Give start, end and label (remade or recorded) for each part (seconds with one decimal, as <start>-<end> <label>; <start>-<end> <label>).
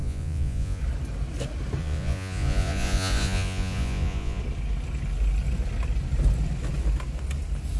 0.0-0.8 remade; 0.8-1.8 recorded; 1.8-4.4 remade; 4.4-7.8 recorded